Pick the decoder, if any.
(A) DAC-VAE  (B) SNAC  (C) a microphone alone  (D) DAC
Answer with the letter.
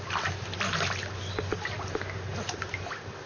C